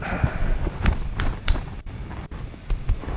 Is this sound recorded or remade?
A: remade